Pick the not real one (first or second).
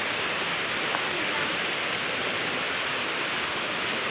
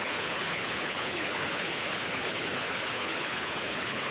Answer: second